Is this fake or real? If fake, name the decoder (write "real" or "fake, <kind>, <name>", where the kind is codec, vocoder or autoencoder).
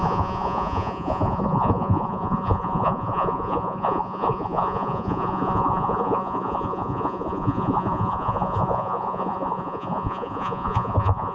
fake, vocoder, Vocos